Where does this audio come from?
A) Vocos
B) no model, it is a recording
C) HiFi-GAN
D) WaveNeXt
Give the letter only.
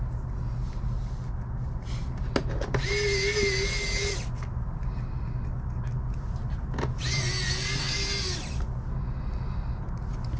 B